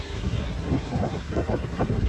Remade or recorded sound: remade